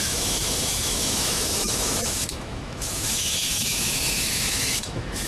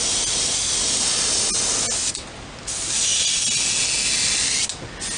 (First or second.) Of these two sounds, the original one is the second